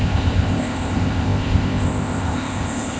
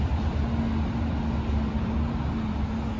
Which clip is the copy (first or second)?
first